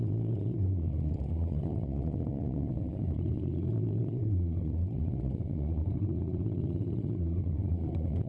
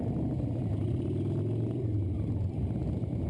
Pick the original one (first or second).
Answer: second